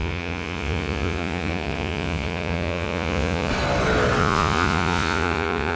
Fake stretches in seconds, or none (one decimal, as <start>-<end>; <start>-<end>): 0.0-3.5; 4.2-5.8